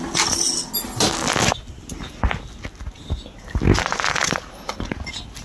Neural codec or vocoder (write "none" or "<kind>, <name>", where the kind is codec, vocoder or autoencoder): none